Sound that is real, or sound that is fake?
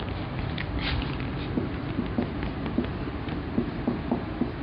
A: real